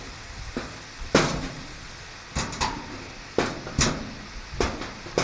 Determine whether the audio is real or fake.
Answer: real